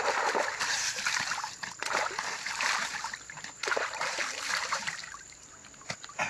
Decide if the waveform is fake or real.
fake